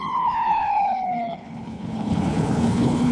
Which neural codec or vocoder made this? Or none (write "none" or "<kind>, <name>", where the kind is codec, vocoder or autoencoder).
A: codec, HILCodec